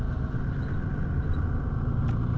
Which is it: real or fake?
real